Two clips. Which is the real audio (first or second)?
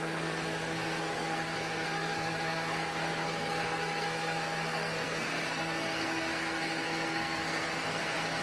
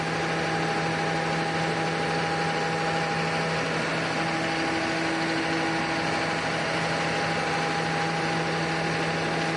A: second